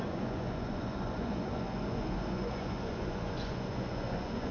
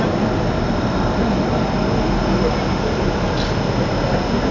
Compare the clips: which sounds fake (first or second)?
first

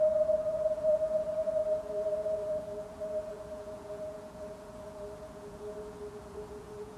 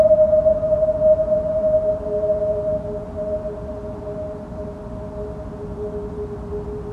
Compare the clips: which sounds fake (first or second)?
first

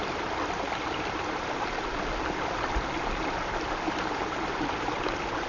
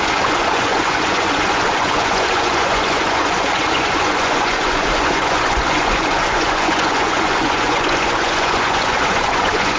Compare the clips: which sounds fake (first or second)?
second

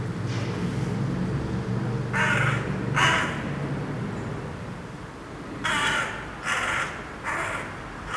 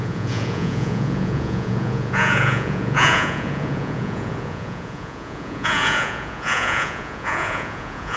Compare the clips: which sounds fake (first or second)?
second